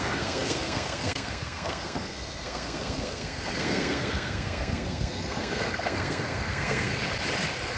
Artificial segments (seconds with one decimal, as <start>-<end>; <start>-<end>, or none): 0.0-6.9